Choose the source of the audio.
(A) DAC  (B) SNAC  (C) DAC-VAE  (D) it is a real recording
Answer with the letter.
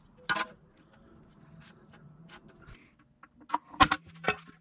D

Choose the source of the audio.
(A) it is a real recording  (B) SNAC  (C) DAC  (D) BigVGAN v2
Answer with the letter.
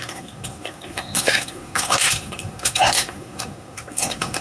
B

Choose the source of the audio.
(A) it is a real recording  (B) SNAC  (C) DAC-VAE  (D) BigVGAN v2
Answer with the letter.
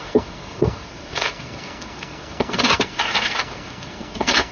B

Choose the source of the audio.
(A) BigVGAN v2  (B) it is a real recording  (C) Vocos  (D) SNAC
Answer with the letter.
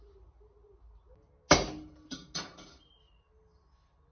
B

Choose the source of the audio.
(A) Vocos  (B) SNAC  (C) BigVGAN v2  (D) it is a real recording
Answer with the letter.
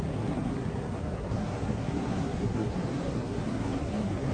B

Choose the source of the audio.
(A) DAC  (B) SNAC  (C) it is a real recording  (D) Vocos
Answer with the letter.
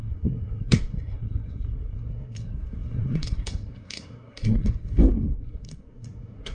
B